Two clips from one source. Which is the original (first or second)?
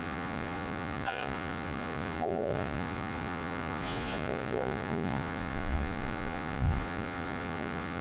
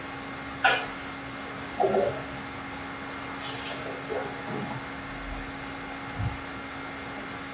second